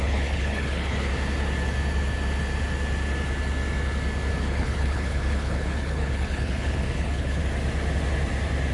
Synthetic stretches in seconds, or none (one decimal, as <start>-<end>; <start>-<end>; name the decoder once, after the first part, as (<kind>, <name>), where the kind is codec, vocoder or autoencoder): 0.0-1.1 (codec, HILCodec); 4.4-7.4

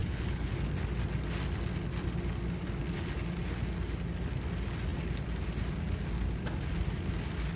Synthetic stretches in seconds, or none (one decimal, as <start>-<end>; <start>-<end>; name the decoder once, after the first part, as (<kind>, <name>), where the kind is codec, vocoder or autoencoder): 0.0-0.5 (codec, HILCodec)

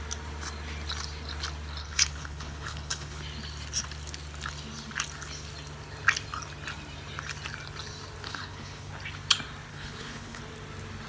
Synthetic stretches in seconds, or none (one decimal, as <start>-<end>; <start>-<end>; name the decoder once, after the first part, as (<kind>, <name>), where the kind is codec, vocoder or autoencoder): 1.8-3.2 (codec, HILCodec); 8.2-8.9; 9.7-10.4